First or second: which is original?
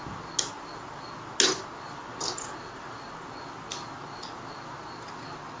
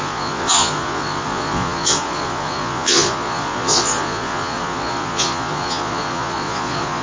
first